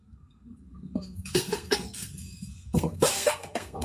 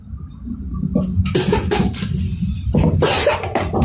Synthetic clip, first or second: first